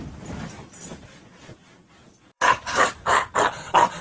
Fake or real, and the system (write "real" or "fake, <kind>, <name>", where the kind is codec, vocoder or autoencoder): fake, vocoder, BigVGAN v2